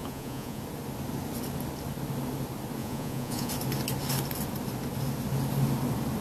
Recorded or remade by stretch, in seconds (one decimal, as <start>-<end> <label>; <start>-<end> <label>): 0.0-0.6 remade; 0.6-2.8 recorded; 2.8-3.5 remade; 3.5-6.2 recorded